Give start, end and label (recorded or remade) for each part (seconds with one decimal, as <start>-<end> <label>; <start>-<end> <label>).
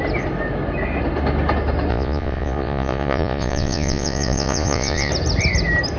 0.0-1.9 recorded; 1.9-5.1 remade; 5.1-6.0 recorded